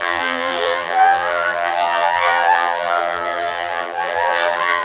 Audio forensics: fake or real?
fake